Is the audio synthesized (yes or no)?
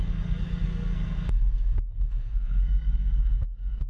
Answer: yes